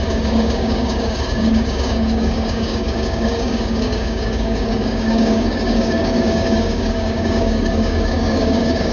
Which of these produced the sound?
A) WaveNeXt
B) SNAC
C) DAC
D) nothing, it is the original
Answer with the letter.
C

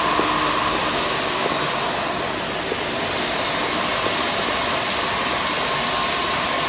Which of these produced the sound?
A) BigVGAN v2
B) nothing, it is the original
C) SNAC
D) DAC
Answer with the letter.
B